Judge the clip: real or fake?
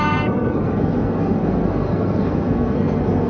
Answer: fake